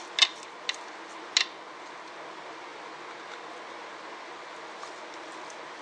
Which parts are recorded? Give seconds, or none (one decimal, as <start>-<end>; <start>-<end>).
0.0-5.8